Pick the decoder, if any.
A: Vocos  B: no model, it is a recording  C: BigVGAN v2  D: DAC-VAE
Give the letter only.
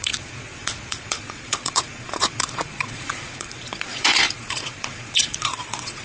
A